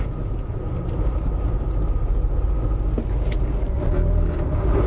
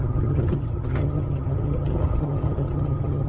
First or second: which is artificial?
second